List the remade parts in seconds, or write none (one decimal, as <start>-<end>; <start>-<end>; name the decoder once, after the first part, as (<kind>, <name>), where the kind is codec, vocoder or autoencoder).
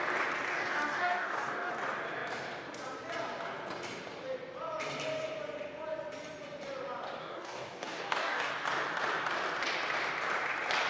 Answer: 0.5-1.7 (codec, DAC); 7.2-8.5